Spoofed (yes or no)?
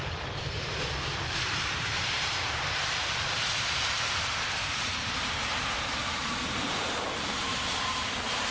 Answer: yes